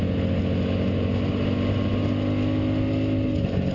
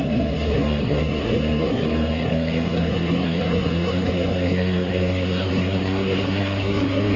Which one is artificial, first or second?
second